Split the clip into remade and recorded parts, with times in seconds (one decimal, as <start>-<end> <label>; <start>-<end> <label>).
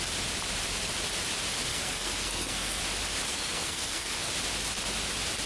0.0-1.7 recorded; 1.7-2.8 remade; 2.8-3.3 recorded; 3.3-4.3 remade; 4.3-5.5 recorded